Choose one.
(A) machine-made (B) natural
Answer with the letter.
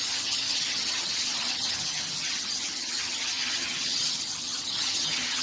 A